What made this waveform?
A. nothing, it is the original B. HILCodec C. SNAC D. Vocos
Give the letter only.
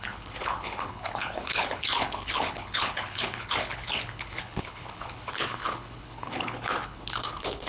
B